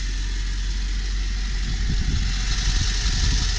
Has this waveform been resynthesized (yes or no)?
no